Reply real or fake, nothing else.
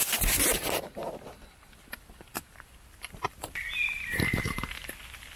fake